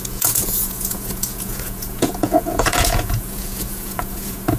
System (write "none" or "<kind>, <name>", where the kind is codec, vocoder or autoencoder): vocoder, Vocos